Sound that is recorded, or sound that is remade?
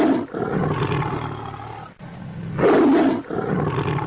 recorded